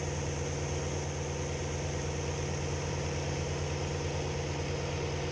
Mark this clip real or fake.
real